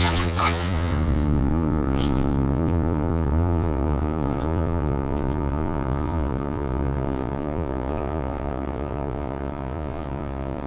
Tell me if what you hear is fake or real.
fake